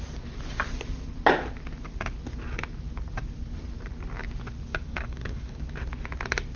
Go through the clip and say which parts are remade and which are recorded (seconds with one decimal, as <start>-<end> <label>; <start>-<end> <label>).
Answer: 0.0-4.7 recorded; 4.7-5.6 remade; 5.6-6.6 recorded